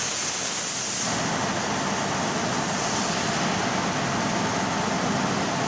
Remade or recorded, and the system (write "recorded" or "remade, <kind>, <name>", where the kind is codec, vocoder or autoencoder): recorded